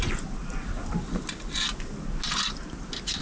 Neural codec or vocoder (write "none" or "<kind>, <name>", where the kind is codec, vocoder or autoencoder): none